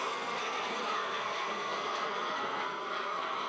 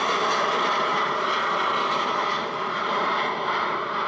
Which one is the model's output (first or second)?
first